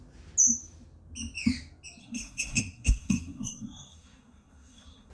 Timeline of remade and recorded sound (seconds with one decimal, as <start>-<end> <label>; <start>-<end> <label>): 0.0-2.0 recorded; 2.0-5.1 remade